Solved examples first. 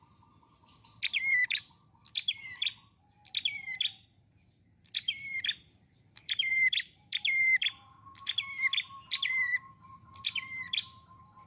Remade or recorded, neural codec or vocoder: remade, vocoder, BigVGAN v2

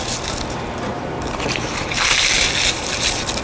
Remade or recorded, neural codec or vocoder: recorded